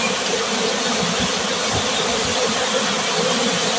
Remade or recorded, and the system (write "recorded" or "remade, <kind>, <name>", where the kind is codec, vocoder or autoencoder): recorded